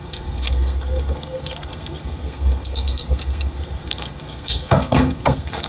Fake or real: fake